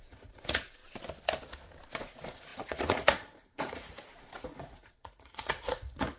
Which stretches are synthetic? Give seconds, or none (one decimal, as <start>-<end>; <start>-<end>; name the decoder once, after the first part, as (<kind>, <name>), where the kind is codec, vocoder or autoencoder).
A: 0.0-0.8 (vocoder, Vocos); 2.0-6.2